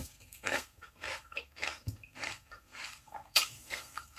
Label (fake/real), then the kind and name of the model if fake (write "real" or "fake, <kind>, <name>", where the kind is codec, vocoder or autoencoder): fake, codec, SNAC